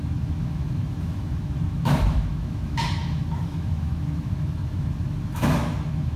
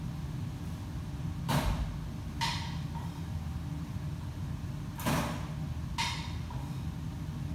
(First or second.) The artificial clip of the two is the first